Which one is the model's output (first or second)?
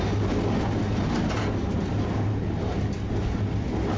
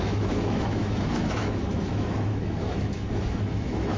second